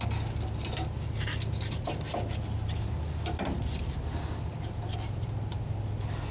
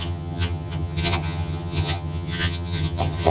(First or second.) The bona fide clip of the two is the first